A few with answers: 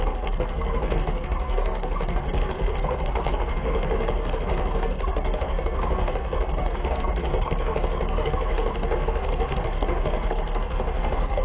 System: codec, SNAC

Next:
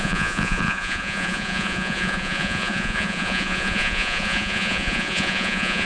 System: vocoder, Vocos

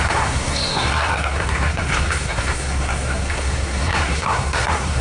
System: codec, SNAC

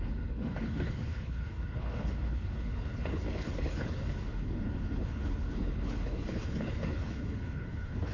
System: codec, HILCodec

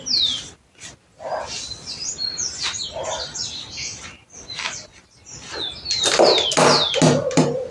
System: none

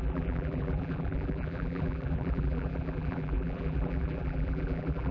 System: vocoder, BigVGAN v2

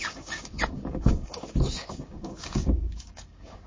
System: codec, DAC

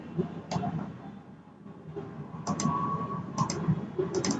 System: vocoder, BigVGAN v2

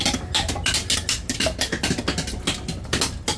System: none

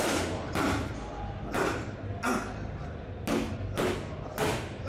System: none